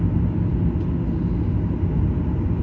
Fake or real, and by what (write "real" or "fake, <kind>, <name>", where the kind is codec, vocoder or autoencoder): real